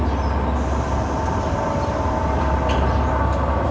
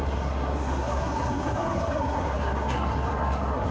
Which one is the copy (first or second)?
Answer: second